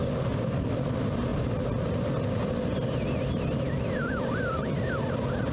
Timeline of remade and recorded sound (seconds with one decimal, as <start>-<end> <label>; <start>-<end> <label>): 0.0-5.5 recorded